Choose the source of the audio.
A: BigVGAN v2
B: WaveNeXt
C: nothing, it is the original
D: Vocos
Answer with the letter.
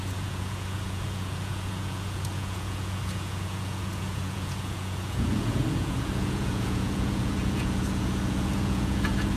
D